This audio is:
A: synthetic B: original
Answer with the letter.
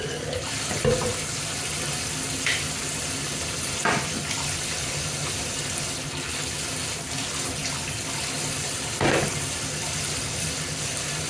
B